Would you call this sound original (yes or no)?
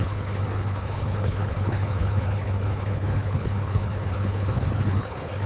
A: no